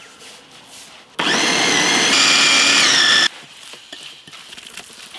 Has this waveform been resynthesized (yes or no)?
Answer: no